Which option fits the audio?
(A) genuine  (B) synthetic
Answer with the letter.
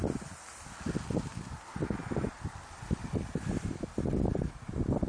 A